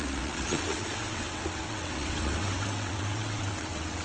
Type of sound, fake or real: fake